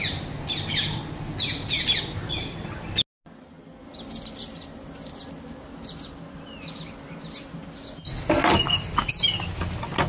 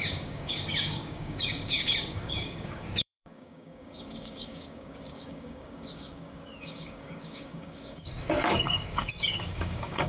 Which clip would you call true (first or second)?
first